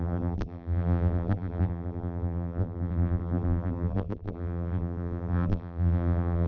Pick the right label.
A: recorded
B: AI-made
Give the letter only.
B